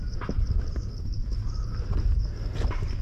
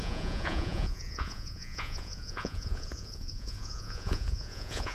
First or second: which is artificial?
second